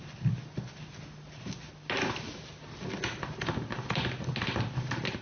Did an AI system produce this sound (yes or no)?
no